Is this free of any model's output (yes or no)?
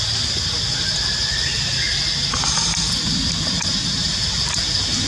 yes